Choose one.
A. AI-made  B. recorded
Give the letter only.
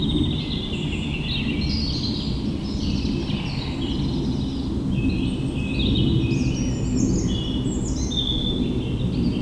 B